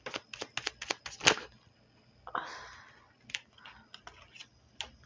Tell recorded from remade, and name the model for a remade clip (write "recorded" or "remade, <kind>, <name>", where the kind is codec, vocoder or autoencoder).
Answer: recorded